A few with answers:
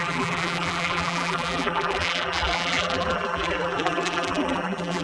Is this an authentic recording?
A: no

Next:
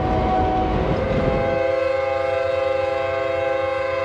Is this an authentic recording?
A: yes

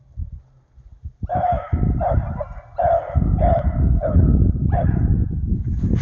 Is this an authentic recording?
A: yes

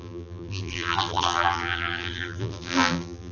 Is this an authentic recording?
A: no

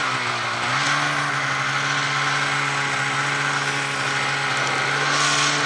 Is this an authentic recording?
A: yes